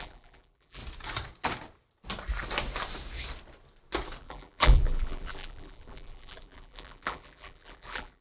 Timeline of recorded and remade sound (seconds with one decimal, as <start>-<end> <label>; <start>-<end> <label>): 0.0-0.8 remade; 0.8-4.2 recorded; 4.2-8.2 remade